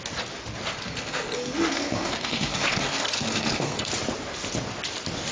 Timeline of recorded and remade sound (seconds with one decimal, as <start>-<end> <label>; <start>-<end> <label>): 0.0-0.7 recorded; 0.7-3.9 remade; 3.9-5.3 recorded